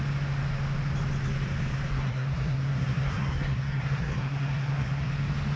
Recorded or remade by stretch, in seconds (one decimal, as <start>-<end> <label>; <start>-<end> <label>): 0.0-1.9 recorded; 1.9-5.1 remade; 5.1-5.6 recorded